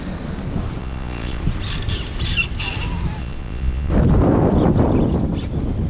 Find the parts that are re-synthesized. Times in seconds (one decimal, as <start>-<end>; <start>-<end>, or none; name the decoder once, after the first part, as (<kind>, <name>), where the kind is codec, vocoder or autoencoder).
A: 0.8-1.4 (vocoder, Vocos); 3.2-3.9